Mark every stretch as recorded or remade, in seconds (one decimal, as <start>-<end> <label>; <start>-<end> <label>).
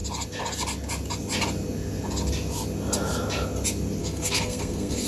0.0-4.0 recorded; 4.0-5.1 remade